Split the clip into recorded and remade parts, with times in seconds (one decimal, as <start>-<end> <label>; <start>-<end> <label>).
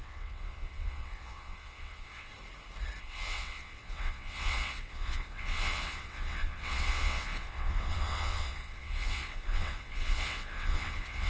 0.0-2.3 remade; 2.3-3.0 recorded; 3.0-11.3 remade